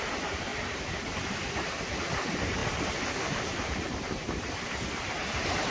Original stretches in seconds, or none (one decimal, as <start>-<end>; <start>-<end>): 0.5-2.1